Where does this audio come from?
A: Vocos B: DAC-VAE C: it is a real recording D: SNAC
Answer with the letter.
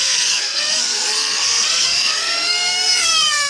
D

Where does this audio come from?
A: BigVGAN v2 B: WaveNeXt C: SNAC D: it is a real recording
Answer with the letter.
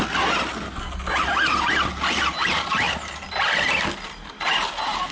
D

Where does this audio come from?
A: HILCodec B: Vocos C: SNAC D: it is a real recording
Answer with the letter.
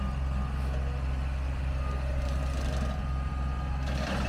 D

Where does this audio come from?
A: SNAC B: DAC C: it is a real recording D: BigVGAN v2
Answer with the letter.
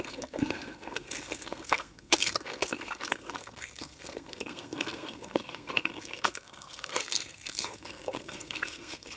A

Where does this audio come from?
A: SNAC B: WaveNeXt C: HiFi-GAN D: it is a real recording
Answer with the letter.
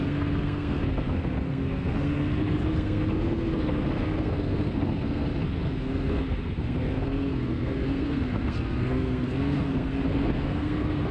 A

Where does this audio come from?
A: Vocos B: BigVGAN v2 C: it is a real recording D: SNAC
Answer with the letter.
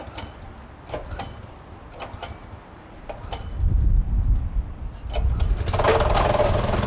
C